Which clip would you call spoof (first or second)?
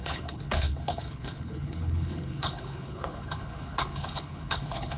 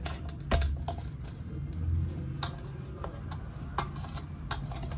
first